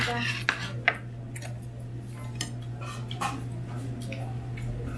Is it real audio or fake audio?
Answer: real